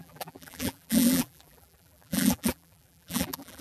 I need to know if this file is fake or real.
fake